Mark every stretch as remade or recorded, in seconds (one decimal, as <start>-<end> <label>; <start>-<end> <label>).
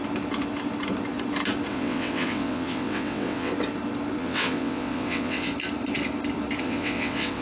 0.0-1.7 recorded; 1.7-3.5 remade; 3.5-4.2 recorded; 4.2-5.5 remade; 5.5-6.6 recorded; 6.6-7.4 remade